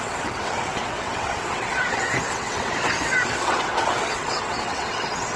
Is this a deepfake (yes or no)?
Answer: yes